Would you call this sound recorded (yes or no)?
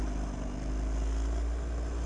yes